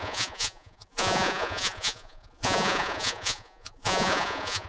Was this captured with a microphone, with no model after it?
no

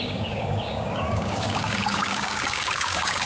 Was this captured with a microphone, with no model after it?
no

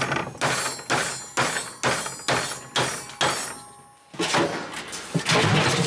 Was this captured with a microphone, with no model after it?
yes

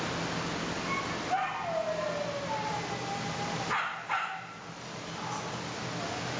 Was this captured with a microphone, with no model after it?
yes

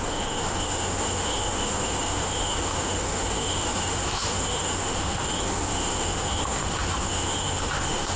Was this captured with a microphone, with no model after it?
no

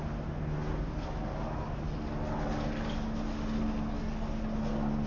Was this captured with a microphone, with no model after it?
yes